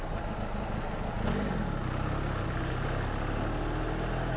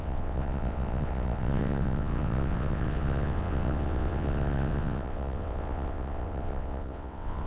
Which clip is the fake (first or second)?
second